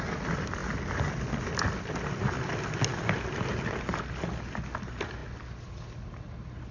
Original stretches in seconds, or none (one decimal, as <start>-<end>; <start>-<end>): 0.0-6.7